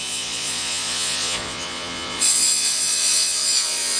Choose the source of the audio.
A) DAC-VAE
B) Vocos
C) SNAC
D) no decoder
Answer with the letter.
B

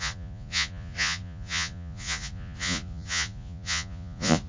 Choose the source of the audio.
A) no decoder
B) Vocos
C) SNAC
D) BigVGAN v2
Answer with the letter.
B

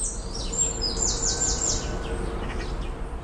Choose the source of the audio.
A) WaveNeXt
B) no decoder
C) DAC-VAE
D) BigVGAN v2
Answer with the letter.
B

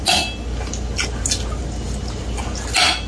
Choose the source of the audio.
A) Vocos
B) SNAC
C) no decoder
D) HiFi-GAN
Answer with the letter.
C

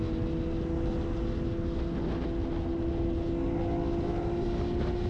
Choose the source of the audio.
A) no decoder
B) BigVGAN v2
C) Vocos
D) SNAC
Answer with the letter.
A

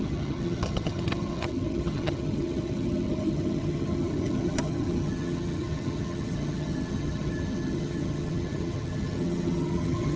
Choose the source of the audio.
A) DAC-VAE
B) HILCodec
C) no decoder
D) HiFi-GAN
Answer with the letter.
D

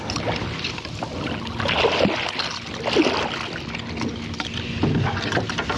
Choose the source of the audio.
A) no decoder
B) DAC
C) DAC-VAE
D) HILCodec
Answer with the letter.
A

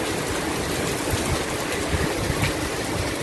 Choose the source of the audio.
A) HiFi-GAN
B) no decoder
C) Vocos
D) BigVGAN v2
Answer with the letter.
B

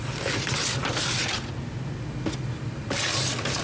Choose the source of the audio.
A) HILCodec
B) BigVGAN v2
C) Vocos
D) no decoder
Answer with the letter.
D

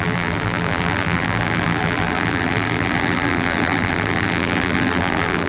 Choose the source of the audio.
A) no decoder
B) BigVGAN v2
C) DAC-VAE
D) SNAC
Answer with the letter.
B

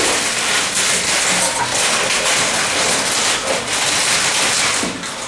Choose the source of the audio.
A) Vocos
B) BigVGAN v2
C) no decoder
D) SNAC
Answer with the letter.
C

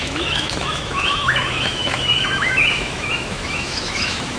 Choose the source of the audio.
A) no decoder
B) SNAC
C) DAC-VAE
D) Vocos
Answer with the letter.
C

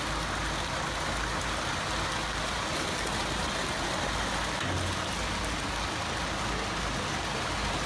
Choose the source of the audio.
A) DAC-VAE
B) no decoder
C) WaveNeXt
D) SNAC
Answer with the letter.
B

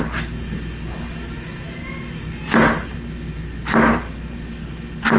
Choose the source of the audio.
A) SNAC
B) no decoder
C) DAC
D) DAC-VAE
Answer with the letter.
B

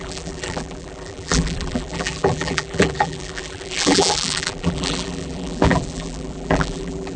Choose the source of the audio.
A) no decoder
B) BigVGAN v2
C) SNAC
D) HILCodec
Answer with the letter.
B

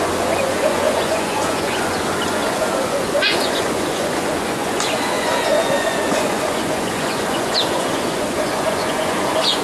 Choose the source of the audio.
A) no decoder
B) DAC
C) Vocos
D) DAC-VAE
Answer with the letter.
C